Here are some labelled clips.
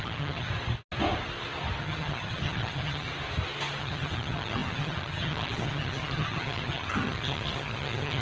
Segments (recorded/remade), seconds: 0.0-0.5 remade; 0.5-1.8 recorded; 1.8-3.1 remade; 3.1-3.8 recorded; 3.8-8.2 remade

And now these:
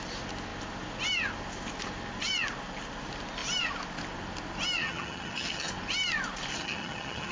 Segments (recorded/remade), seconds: 0.0-4.8 recorded; 4.8-5.7 remade; 5.7-6.5 recorded; 6.5-7.3 remade

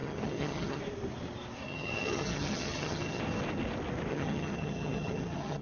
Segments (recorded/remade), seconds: 0.0-0.8 remade; 0.8-1.6 recorded; 1.6-3.2 remade; 3.2-4.1 recorded; 4.1-5.6 remade

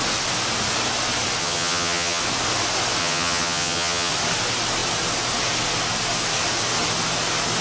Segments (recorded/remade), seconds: 0.0-1.4 recorded; 1.4-2.2 remade; 2.2-3.0 recorded; 3.0-4.1 remade; 4.1-7.6 recorded

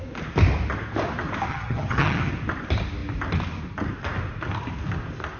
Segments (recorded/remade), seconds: 0.0-1.5 recorded; 1.5-2.3 remade; 2.3-5.4 recorded

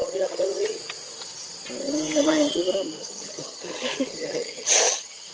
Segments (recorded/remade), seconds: 0.0-0.8 remade; 0.8-1.8 recorded; 1.8-2.6 remade; 2.6-3.0 recorded; 3.0-5.3 remade

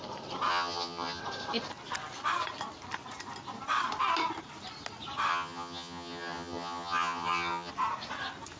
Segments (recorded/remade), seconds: 0.0-0.5 recorded; 0.5-1.2 remade; 1.2-5.3 recorded; 5.3-7.7 remade; 7.7-8.6 recorded